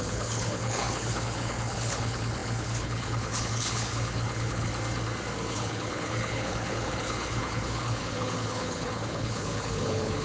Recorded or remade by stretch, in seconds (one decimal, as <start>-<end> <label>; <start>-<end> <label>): 0.0-4.7 remade; 4.7-5.5 recorded; 5.5-10.2 remade